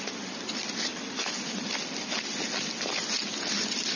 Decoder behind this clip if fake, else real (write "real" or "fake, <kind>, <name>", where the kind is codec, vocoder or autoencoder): fake, vocoder, BigVGAN v2